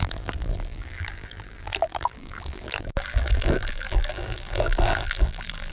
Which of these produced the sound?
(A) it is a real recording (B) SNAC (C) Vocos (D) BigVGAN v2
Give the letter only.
D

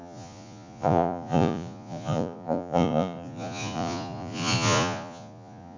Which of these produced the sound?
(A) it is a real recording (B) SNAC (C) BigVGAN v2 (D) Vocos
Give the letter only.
D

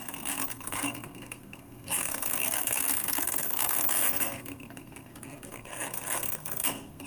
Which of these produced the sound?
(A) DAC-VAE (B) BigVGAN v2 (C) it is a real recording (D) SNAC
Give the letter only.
D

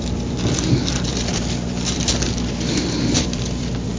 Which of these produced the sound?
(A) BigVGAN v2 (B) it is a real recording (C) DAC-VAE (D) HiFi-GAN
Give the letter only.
A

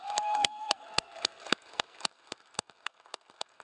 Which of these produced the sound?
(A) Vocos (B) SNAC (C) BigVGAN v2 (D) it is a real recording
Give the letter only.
B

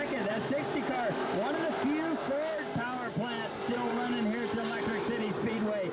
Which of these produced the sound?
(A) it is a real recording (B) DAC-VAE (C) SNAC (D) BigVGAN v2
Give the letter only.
A